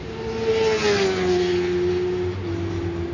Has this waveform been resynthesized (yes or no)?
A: no